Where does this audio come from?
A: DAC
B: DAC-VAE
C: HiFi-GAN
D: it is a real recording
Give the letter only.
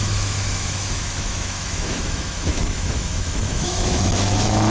B